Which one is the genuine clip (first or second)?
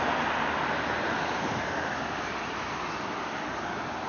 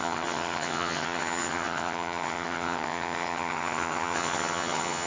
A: first